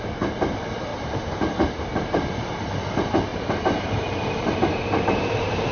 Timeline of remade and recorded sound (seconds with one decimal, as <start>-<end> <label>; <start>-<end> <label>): 0.0-0.9 recorded; 0.9-2.3 remade; 2.3-3.3 recorded; 3.3-5.7 remade